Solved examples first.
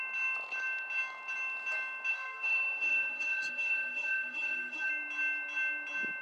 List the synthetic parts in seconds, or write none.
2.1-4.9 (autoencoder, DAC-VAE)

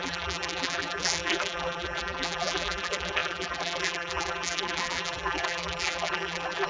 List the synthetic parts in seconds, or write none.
0.0-6.7 (vocoder, BigVGAN v2)

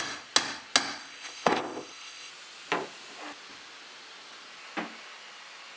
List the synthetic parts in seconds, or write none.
1.0-2.3 (codec, ZipCodec)

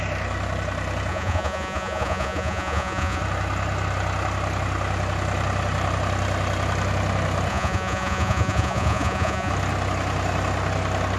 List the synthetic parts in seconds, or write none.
1.1-3.2 (vocoder, Vocos); 7.5-9.5

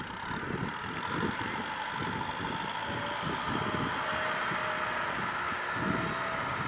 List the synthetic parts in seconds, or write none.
none

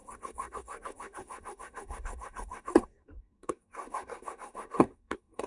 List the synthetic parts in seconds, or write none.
0.0-5.5 (codec, SNAC)

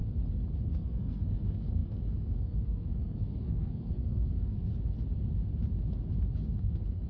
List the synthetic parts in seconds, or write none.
0.6-4.7 (codec, SNAC); 6.6-7.1